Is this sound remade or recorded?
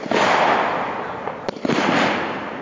recorded